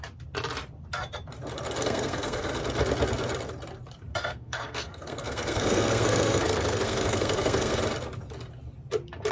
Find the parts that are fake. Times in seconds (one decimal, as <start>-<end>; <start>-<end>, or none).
1.8-2.6; 4.1-7.8